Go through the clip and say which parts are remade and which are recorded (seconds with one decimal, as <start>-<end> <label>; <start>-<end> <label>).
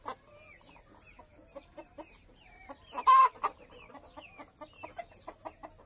0.0-1.3 recorded; 1.3-3.2 remade; 3.2-5.9 recorded